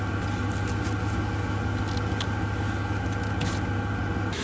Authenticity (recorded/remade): recorded